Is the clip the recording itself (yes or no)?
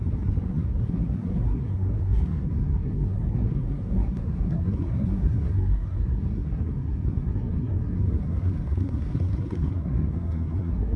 no